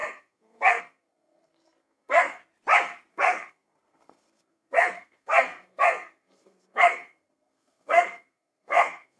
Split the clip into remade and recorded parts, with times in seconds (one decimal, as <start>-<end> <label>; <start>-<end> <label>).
0.0-2.4 remade; 2.4-3.1 recorded; 3.1-9.2 remade